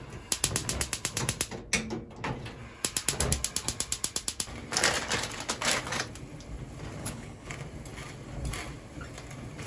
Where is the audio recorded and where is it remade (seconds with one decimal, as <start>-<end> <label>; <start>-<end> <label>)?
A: 0.0-7.0 recorded; 7.0-7.5 remade; 7.5-9.7 recorded